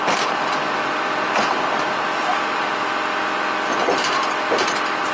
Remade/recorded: recorded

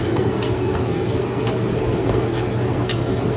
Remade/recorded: remade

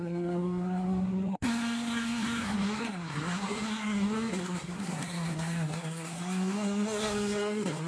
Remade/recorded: remade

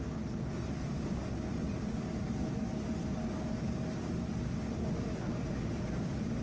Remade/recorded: recorded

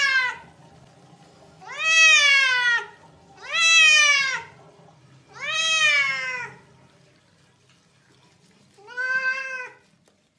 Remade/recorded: recorded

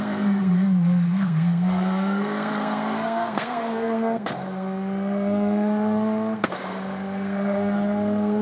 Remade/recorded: remade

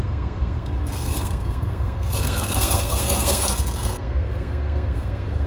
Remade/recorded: remade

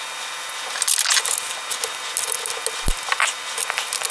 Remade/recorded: recorded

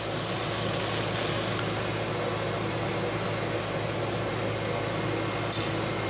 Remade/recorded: recorded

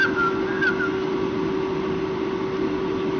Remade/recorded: recorded